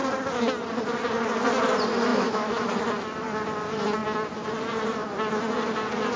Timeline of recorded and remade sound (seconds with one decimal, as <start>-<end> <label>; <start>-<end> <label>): 0.0-2.1 recorded; 2.1-2.7 remade; 2.7-6.2 recorded